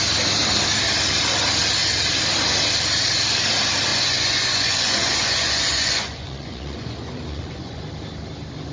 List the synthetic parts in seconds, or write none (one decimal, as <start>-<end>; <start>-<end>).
3.9-7.8